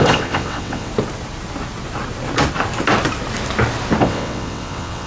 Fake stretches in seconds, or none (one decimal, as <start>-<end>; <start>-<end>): 0.0-0.9; 4.0-5.1